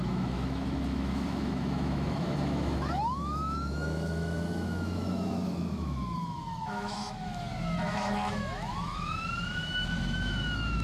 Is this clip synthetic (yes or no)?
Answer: yes